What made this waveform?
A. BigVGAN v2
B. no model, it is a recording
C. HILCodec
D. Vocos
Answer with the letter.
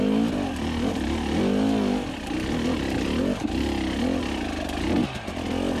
B